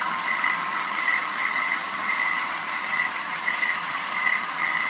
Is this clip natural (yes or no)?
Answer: no